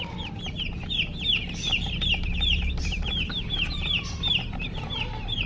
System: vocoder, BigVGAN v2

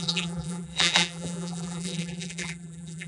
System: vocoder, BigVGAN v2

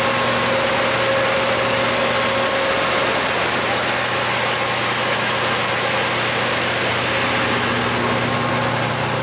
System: none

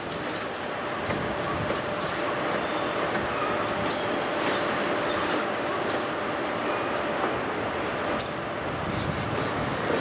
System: none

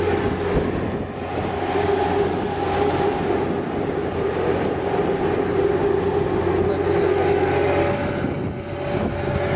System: none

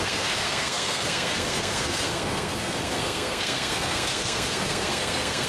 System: codec, SNAC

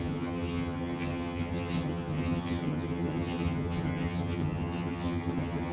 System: vocoder, HiFi-GAN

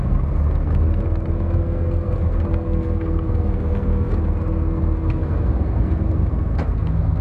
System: codec, SNAC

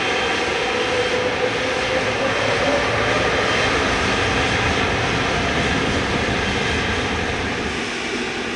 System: none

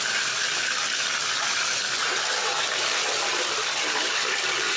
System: none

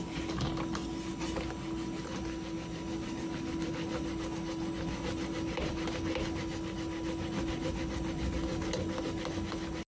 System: none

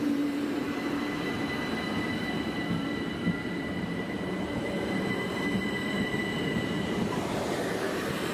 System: vocoder, BigVGAN v2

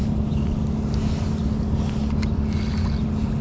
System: none